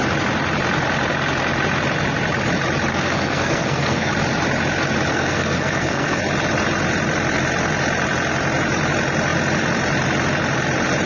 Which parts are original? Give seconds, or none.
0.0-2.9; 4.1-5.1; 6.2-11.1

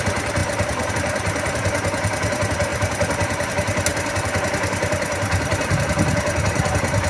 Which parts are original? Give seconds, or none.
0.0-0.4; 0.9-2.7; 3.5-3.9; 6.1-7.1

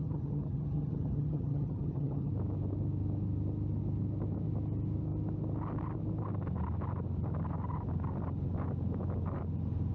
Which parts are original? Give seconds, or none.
2.3-9.9

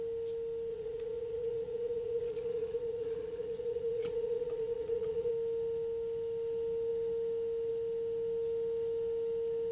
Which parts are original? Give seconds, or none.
0.0-0.7; 5.3-9.7

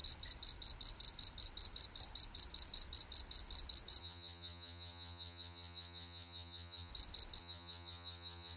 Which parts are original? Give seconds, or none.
0.0-4.0; 6.9-7.4

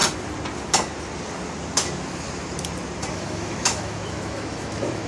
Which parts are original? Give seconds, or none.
0.0-3.1

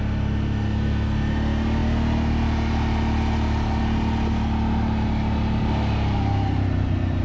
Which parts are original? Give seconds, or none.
0.0-7.2

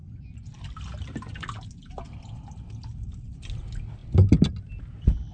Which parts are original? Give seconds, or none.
0.0-5.3